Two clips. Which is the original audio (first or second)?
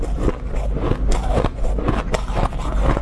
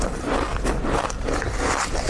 first